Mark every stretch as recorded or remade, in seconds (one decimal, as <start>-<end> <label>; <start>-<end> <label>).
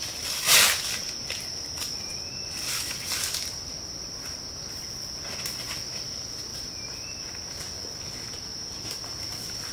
0.0-9.7 recorded